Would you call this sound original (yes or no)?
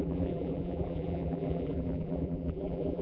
no